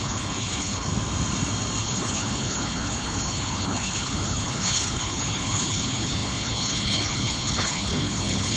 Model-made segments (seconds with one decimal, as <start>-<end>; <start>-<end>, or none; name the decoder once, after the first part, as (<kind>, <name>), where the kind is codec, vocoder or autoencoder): 0.0-0.9 (codec, HILCodec); 1.8-8.6